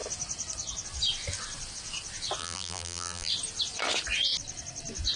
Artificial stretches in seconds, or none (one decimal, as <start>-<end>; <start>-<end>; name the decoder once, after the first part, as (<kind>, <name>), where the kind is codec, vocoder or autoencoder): 2.4-3.3 (vocoder, BigVGAN v2)